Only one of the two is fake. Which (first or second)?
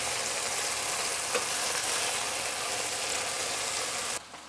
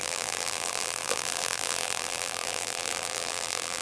second